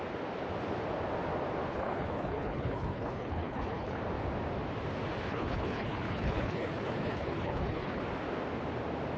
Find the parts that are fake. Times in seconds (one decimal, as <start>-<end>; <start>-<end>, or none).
1.7-4.0; 5.3-8.0